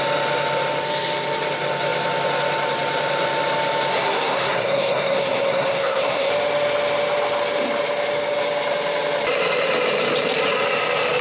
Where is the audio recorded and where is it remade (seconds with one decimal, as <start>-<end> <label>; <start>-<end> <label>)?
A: 0.0-3.9 recorded; 3.9-6.3 remade; 6.3-11.2 recorded